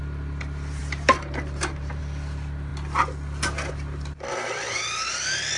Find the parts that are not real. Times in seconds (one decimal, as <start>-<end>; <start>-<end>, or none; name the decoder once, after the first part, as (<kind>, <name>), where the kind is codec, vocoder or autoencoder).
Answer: 0.8-2.0 (vocoder, BigVGAN v2)